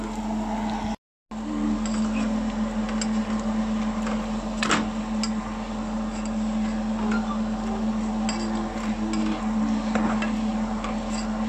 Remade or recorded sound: recorded